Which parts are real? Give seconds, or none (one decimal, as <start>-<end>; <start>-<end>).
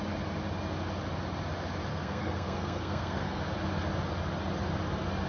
0.0-1.9; 3.4-5.3